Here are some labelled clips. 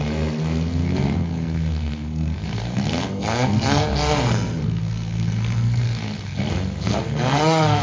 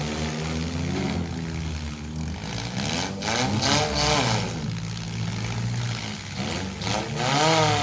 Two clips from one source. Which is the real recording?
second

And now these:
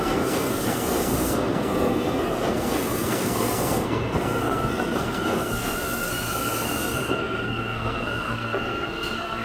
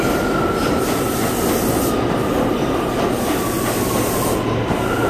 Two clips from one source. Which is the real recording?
second